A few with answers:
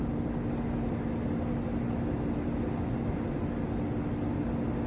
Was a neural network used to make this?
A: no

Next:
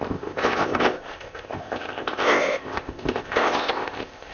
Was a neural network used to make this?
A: yes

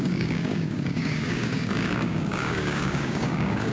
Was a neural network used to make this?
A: yes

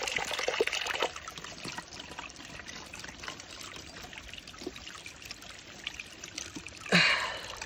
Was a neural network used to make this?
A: no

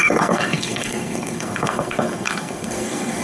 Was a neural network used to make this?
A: yes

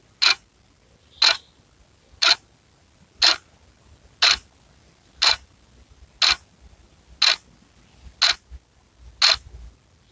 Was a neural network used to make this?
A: no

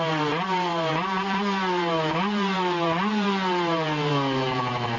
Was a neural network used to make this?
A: yes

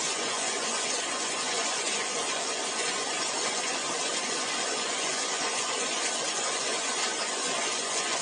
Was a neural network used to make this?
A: yes